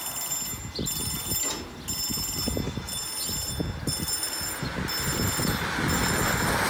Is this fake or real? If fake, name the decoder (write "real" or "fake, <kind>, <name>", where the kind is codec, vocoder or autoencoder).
real